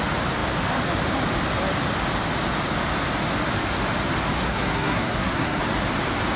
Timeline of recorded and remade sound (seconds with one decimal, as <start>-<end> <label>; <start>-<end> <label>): 0.0-4.4 recorded; 4.4-5.6 remade; 5.6-6.4 recorded